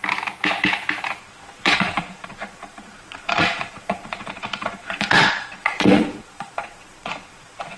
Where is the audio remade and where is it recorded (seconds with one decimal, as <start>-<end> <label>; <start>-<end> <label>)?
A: 0.0-1.2 recorded; 1.2-7.8 remade